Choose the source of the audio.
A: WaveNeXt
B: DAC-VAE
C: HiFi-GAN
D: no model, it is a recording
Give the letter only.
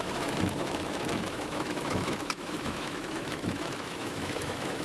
B